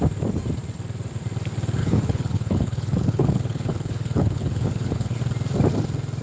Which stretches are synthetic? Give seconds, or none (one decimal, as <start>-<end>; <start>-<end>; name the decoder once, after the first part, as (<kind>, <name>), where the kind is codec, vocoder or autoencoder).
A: 1.8-5.2 (codec, HILCodec)